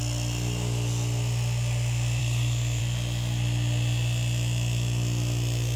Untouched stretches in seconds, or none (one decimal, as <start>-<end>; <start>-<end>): 0.0-2.2; 2.8-5.8